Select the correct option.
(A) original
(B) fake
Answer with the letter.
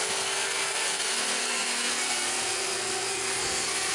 B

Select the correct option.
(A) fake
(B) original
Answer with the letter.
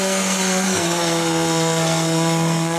A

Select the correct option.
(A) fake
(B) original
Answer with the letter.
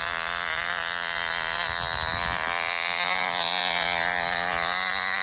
B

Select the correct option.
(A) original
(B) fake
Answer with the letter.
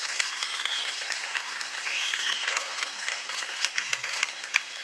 B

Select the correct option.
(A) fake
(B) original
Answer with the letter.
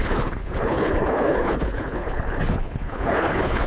A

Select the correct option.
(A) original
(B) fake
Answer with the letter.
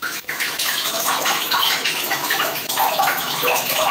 B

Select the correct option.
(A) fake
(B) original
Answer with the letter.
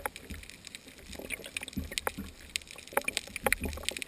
B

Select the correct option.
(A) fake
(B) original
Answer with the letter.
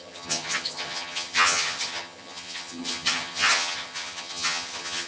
A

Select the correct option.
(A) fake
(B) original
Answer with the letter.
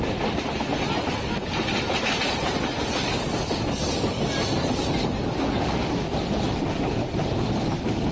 B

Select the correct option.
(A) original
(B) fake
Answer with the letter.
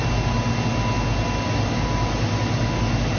A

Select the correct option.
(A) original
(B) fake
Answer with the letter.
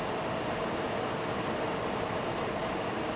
A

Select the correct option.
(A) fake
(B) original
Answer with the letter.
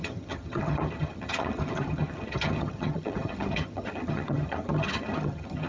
A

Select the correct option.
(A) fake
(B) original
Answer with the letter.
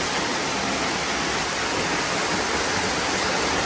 B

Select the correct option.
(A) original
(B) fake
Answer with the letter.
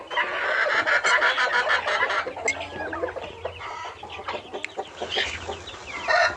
A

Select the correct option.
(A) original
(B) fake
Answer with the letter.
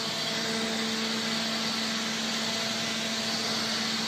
A